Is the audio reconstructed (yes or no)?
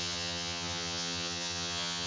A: yes